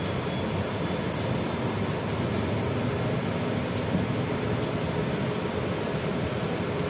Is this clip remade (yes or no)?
no